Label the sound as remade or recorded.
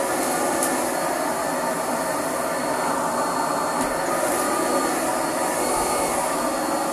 recorded